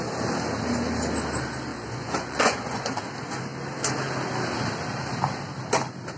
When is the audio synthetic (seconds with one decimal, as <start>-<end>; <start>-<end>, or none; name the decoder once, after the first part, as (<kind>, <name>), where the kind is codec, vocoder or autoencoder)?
1.7-2.9 (vocoder, Vocos)